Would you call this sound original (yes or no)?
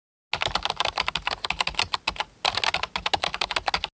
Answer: yes